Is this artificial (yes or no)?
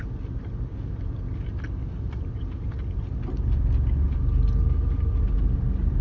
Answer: no